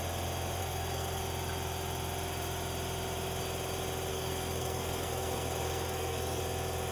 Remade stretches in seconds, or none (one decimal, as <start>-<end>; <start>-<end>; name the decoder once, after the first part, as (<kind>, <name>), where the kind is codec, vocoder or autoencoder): 0.6-1.2 (codec, SNAC); 4.1-6.4